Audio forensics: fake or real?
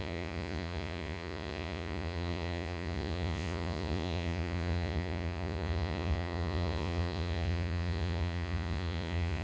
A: fake